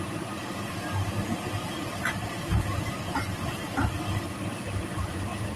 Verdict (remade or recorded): remade